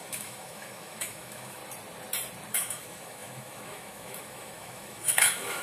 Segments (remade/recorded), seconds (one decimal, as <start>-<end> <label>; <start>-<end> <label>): 0.0-1.6 remade; 1.6-2.5 recorded; 2.5-5.6 remade